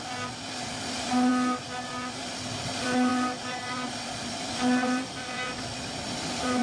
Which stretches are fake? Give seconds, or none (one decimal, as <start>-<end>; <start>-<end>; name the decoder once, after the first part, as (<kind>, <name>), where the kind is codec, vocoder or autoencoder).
3.1-6.6 (vocoder, BigVGAN v2)